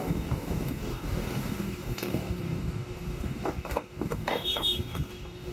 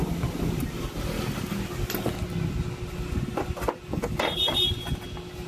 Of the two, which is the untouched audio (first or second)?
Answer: second